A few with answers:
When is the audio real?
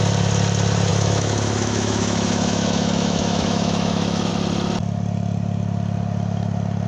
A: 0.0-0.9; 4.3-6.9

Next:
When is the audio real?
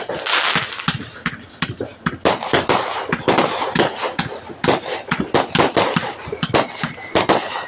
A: 0.0-7.7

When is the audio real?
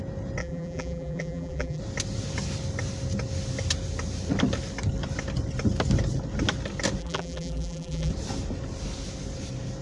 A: 0.0-0.4; 1.8-7.0; 8.1-9.8